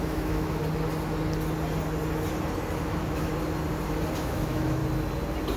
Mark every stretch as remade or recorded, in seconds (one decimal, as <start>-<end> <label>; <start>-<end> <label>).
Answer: 0.0-0.6 remade; 0.6-2.8 recorded; 2.8-3.3 remade; 3.3-4.2 recorded; 4.2-4.8 remade; 4.8-5.6 recorded